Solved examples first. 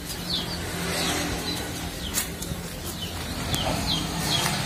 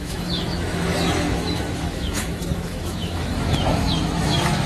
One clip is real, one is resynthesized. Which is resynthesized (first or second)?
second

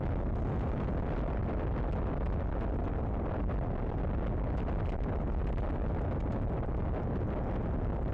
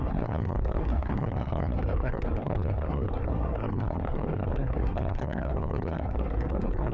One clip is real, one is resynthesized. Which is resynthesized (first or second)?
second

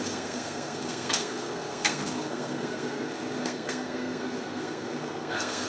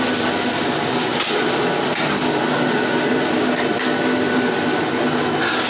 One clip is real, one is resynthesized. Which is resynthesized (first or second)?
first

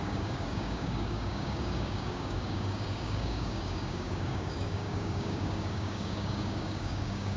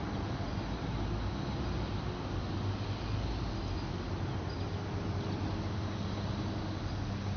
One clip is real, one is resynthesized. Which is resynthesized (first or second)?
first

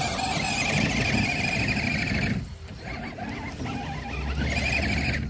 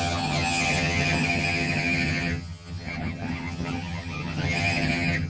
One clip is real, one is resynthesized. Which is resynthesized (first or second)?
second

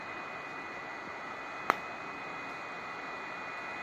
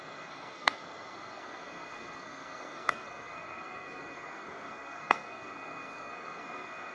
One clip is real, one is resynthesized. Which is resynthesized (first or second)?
second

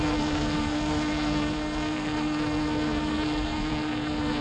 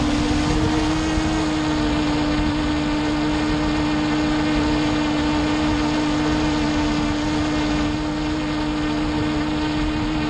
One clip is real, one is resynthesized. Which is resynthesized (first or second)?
first